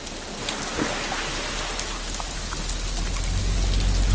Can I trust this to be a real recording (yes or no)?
yes